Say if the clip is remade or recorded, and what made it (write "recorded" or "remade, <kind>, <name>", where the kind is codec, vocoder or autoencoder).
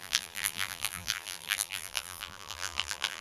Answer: remade, vocoder, BigVGAN v2